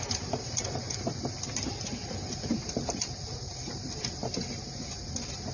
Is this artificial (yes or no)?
yes